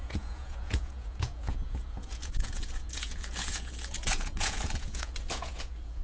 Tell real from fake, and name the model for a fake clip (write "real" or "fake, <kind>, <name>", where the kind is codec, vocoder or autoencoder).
fake, vocoder, Vocos